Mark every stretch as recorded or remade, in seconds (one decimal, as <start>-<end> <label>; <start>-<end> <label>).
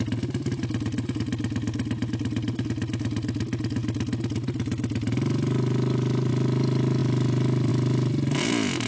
0.0-8.9 recorded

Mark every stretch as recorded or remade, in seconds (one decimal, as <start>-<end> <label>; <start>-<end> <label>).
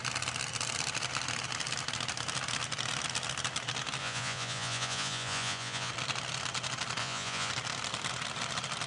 0.0-4.0 recorded; 4.0-5.9 remade; 5.9-7.0 recorded; 7.0-7.5 remade; 7.5-8.9 recorded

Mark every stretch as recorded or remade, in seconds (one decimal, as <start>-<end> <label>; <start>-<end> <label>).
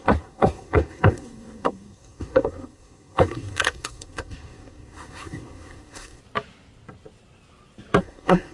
0.0-6.2 remade; 6.2-8.0 recorded; 8.0-8.5 remade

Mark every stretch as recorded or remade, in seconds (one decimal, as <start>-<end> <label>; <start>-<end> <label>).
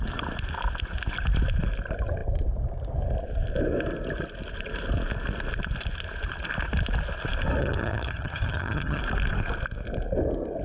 0.0-7.6 recorded; 7.6-9.0 remade; 9.0-10.6 recorded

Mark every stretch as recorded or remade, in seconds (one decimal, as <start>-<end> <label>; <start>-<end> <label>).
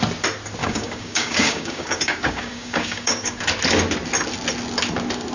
0.0-0.6 recorded; 0.6-3.4 remade; 3.4-5.3 recorded